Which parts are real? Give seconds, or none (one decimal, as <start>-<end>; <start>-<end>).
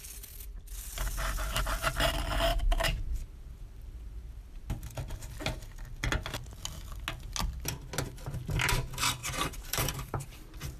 0.0-2.5; 4.7-9.2; 10.4-10.8